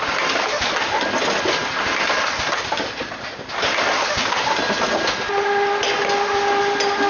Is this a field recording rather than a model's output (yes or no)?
yes